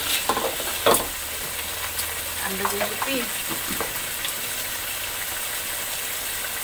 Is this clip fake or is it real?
real